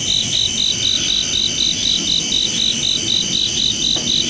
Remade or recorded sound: recorded